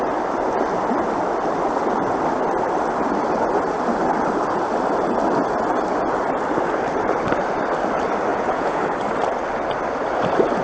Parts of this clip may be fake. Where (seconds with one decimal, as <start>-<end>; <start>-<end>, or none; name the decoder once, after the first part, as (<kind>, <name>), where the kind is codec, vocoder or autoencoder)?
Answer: 8.3-8.8 (vocoder, Vocos)